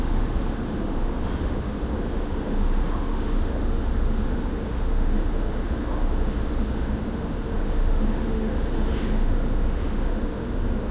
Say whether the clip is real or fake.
fake